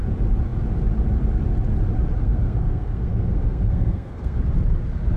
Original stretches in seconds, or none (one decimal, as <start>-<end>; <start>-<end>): 0.0-2.2; 4.4-5.2